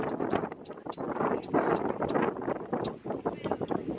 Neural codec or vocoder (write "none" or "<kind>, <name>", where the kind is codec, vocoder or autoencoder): none